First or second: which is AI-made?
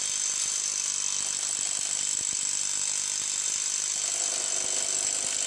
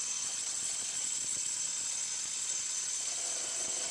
second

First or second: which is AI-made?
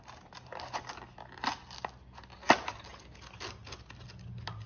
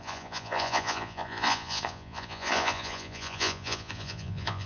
second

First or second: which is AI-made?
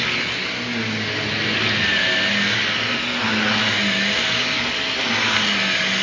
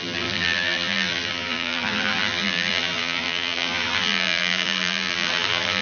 second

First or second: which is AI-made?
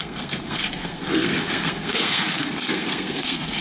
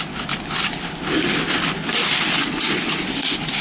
first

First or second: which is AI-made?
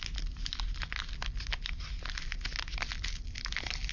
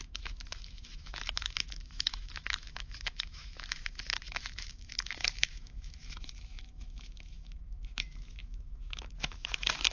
second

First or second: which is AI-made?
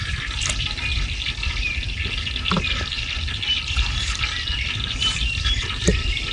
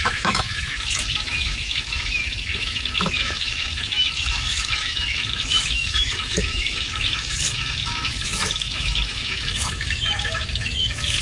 second